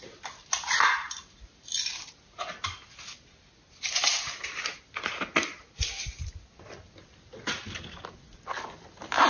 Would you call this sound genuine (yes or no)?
yes